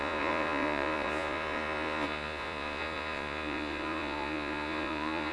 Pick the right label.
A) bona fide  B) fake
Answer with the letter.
B